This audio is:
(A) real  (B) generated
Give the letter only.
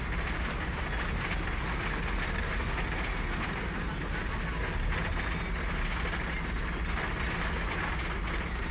A